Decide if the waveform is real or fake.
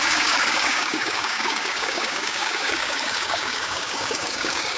fake